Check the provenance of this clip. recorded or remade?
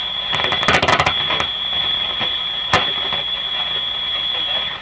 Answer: recorded